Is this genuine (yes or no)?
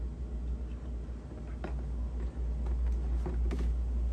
yes